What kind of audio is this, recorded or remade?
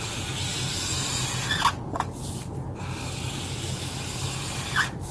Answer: recorded